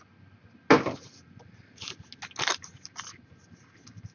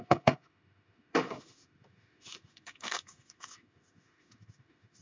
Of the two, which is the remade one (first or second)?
second